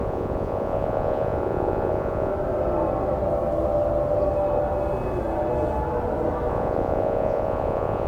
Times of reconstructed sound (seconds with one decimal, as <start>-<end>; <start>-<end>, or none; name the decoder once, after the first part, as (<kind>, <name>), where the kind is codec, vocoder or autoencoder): 0.0-2.3 (vocoder, Vocos); 6.5-8.1

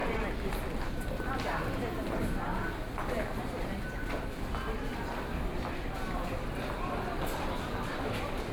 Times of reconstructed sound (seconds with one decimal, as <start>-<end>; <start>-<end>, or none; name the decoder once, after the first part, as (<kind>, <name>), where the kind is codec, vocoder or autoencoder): none

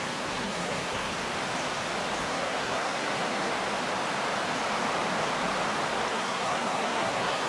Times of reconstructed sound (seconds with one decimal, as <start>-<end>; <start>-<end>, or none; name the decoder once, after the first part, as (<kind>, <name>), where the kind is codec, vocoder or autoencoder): 0.0-1.1 (codec, SNAC); 2.2-3.5; 6.1-7.5

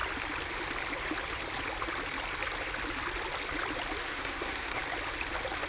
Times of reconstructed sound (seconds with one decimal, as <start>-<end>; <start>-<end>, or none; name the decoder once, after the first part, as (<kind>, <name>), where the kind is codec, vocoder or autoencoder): 4.0-4.8 (codec, SNAC)

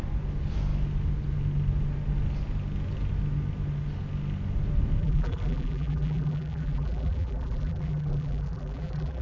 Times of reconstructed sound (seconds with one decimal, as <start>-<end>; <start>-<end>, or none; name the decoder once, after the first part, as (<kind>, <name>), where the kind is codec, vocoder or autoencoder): 5.0-9.2 (vocoder, BigVGAN v2)